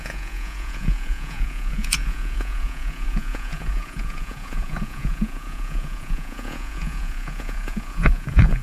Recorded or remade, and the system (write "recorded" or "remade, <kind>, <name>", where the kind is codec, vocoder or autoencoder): remade, vocoder, Vocos